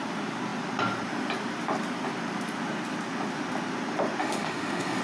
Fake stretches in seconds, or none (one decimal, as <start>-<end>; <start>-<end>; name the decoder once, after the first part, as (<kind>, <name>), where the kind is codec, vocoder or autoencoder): 4.2-5.0 (autoencoder, DAC-VAE)